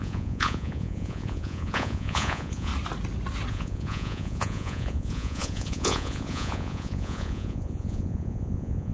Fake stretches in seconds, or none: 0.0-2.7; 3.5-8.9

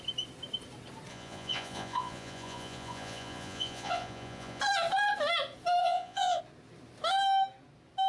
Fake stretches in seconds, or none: 1.1-4.6; 5.8-6.4

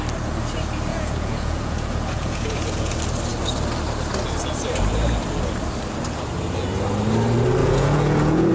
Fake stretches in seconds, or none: 0.9-2.9; 7.6-8.5

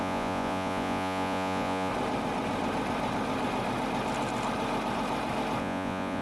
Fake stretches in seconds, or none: 0.0-1.9; 5.6-6.2

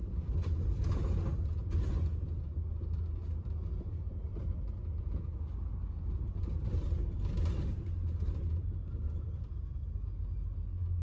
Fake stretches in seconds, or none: none

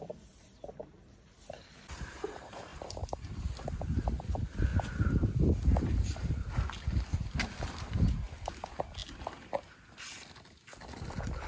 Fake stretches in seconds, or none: none